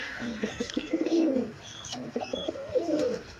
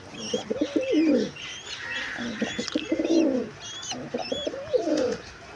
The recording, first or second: second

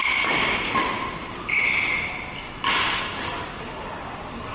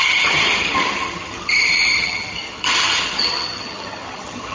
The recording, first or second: first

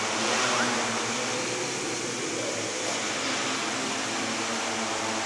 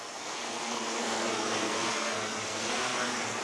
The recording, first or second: first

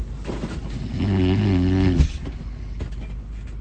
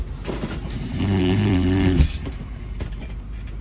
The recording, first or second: first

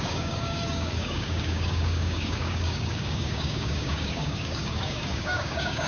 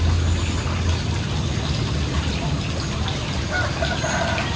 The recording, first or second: second